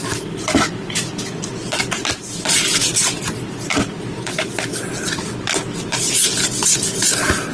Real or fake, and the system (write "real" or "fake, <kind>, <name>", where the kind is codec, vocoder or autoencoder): real